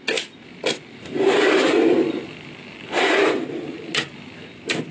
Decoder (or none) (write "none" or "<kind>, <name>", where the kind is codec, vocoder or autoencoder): none